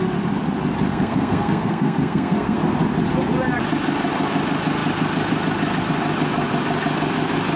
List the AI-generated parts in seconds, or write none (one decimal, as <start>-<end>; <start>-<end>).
0.9-2.6

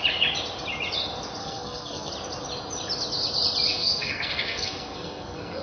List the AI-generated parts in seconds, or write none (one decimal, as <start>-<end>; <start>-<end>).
1.4-2.1; 3.7-5.6

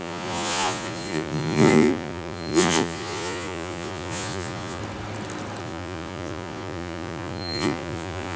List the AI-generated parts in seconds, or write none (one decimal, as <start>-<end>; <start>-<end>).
0.0-4.8; 5.6-8.4